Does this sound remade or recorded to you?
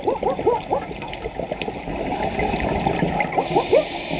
recorded